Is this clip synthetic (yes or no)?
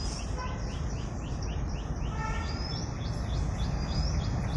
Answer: no